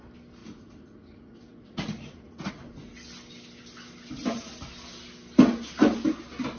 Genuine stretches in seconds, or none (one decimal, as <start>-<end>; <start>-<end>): 0.0-0.4; 2.5-6.6